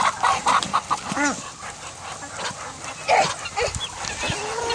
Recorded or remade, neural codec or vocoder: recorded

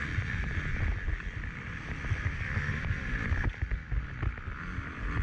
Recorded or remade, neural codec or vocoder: recorded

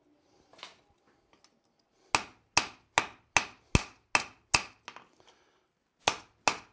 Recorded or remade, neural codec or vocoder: recorded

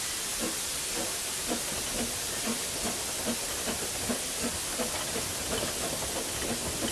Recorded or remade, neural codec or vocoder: recorded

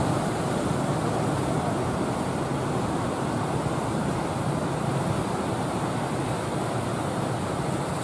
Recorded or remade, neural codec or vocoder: recorded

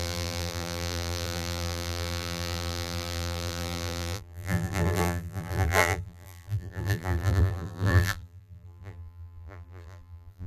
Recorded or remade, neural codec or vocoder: remade, vocoder, BigVGAN v2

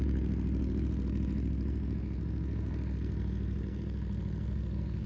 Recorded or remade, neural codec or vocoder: remade, codec, SNAC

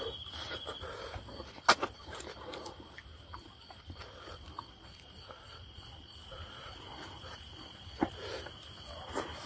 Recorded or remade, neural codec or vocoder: recorded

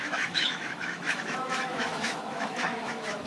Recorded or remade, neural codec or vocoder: remade, autoencoder, DAC-VAE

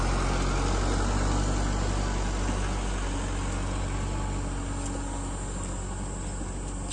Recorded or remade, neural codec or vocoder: recorded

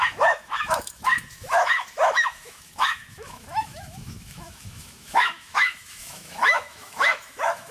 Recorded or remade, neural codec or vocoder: remade, autoencoder, DAC-VAE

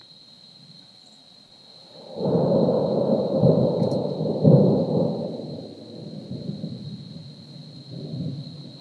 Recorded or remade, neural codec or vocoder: recorded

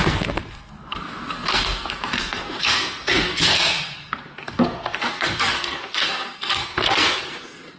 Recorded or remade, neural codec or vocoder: remade, codec, SNAC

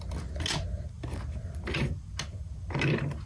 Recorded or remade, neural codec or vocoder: recorded